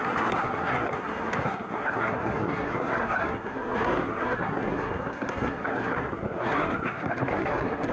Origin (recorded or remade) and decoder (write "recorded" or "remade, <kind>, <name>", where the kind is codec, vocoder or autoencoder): remade, codec, SNAC